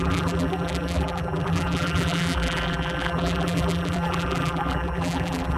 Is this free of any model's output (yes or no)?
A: no